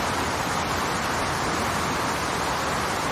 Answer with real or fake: real